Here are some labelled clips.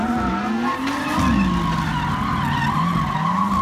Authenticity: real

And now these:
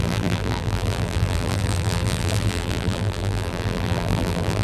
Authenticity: fake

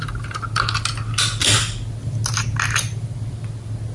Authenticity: real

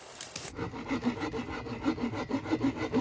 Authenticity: real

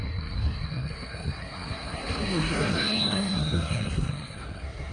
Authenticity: fake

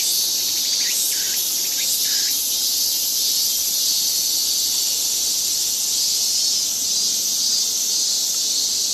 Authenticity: real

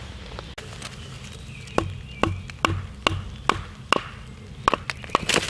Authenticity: real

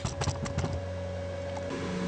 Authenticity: real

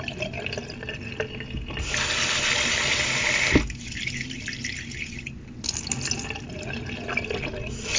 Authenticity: real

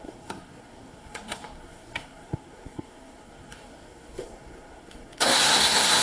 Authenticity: fake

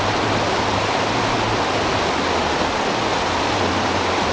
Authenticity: real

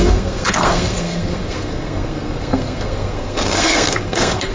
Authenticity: fake